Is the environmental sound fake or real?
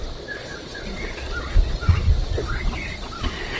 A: fake